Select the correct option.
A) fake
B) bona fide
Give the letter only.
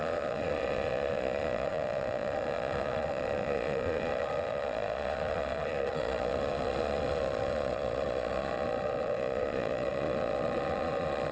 A